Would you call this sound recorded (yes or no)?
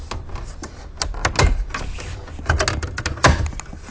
yes